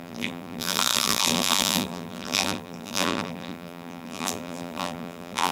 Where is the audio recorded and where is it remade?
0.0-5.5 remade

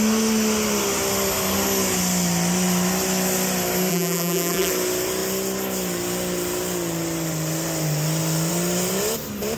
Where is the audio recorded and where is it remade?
0.0-3.9 recorded; 3.9-4.7 remade; 4.7-9.6 recorded

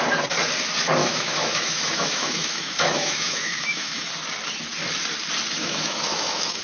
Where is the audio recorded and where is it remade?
0.0-1.0 recorded; 1.0-4.1 remade; 4.1-5.6 recorded; 5.6-6.6 remade

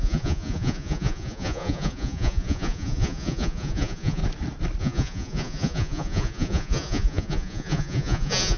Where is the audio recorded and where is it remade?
0.0-4.2 remade; 4.2-4.8 recorded; 4.8-8.6 remade

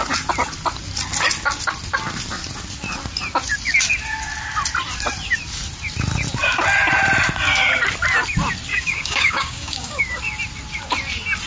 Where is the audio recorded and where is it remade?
0.0-8.7 recorded; 8.7-10.0 remade; 10.0-11.5 recorded

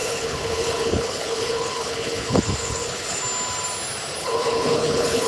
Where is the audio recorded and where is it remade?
0.0-3.2 remade; 3.2-4.2 recorded; 4.2-5.3 remade

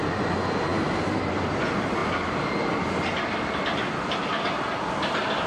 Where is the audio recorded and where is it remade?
0.0-0.7 recorded; 0.7-1.4 remade; 1.4-5.5 recorded

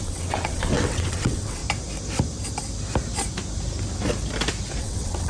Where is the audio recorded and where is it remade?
0.0-1.6 remade; 1.6-4.8 recorded; 4.8-5.3 remade